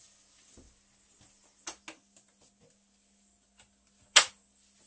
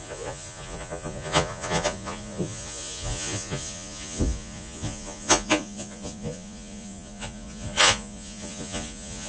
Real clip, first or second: first